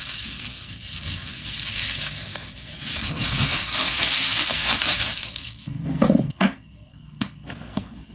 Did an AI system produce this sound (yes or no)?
yes